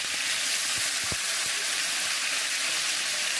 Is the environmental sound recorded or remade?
recorded